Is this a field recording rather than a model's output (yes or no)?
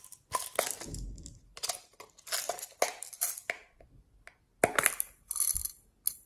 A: yes